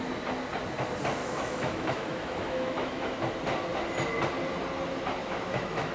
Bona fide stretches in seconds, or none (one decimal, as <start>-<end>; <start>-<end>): 0.0-1.2; 3.2-5.2